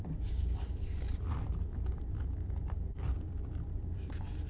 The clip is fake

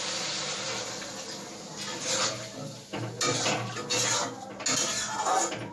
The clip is real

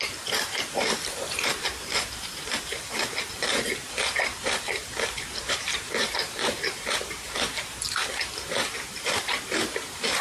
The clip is fake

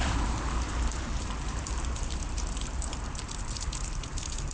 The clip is fake